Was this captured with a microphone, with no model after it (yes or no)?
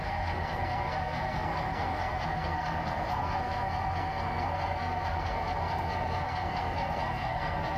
no